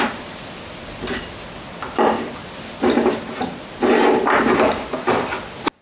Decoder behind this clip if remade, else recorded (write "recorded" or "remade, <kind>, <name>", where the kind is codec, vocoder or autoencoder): recorded